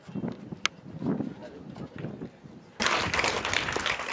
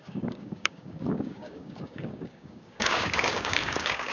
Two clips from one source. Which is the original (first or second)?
first